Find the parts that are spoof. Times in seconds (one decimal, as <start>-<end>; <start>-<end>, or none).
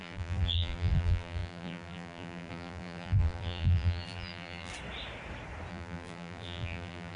0.0-4.7; 5.7-7.2